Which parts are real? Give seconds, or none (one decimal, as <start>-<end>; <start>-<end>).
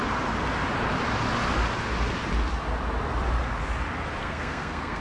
0.0-4.2